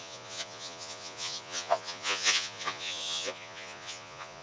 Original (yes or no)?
no